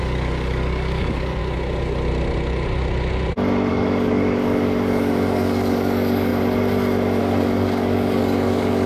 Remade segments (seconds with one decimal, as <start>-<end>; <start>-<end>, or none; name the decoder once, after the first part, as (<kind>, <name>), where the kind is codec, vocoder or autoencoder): 0.0-1.4 (codec, DAC); 3.7-6.3; 7.2-8.9